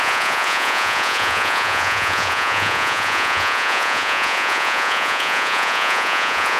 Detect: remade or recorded remade